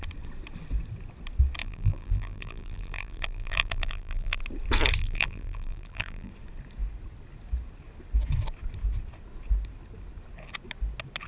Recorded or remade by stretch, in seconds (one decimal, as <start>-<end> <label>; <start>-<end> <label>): 0.0-1.6 recorded; 1.6-4.4 remade; 4.4-5.0 recorded; 5.0-6.3 remade; 6.3-11.3 recorded